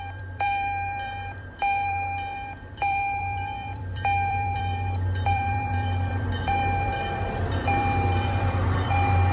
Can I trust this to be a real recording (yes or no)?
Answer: no